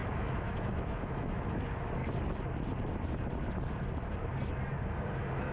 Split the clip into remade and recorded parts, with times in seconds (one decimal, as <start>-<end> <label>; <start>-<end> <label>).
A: 0.0-2.0 remade; 2.0-5.5 recorded